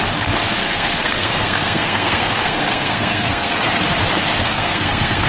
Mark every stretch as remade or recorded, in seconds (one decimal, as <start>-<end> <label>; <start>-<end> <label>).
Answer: 0.0-0.6 recorded; 0.6-3.8 remade; 3.8-4.4 recorded; 4.4-5.3 remade